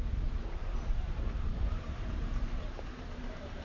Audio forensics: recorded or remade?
remade